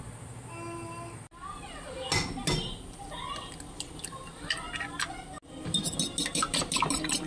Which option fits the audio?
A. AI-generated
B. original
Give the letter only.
B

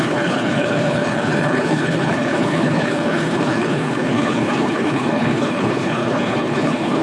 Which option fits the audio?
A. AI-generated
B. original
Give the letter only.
A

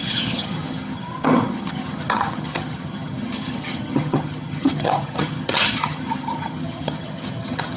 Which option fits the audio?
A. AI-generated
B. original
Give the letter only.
A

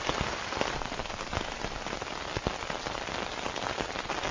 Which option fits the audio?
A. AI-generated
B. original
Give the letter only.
B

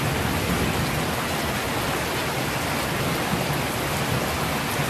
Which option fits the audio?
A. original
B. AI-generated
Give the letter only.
A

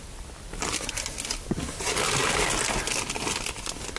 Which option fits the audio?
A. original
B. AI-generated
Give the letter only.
A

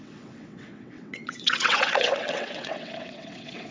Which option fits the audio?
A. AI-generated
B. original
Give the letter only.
A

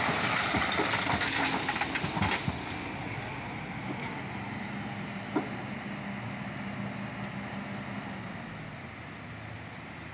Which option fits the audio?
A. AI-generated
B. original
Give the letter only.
B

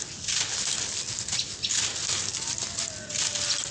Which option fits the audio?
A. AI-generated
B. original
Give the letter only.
B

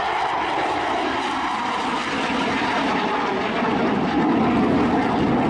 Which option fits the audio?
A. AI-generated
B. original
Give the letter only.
B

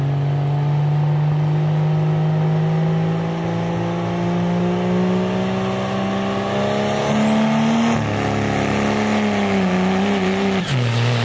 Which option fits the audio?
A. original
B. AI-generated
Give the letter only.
A